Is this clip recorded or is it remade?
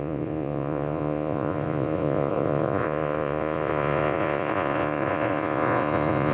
remade